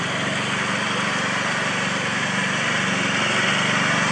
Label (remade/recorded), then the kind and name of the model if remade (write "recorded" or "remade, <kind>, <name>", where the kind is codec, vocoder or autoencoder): recorded